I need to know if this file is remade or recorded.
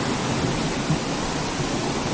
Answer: recorded